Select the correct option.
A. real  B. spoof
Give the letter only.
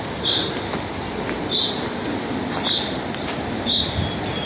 A